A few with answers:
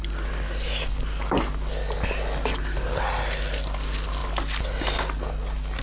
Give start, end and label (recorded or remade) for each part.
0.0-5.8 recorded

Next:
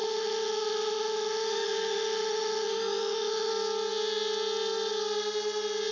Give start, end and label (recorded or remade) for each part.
0.0-3.5 remade; 3.5-5.9 recorded

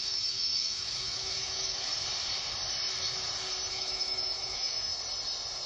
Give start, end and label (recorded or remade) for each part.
0.0-1.9 remade; 1.9-3.7 recorded; 3.7-4.9 remade; 4.9-5.7 recorded

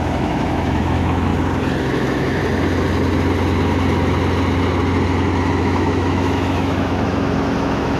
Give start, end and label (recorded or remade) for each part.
0.0-1.3 remade; 1.3-1.8 recorded; 1.8-2.4 remade; 2.4-5.6 recorded; 5.6-8.0 remade